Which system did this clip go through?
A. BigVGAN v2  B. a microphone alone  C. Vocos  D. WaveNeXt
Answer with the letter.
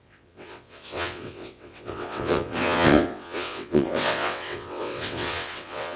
D